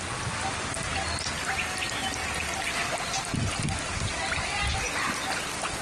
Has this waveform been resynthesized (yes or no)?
no